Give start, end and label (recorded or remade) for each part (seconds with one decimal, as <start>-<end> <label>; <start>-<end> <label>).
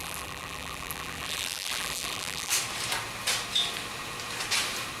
0.0-2.5 remade; 2.5-5.0 recorded